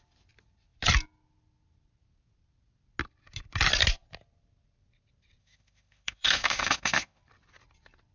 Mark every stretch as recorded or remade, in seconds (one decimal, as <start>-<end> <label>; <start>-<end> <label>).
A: 0.0-5.4 recorded; 5.4-7.2 remade; 7.2-8.1 recorded